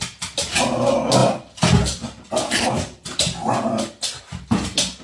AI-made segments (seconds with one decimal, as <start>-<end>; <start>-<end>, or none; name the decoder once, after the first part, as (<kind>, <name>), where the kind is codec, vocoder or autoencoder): none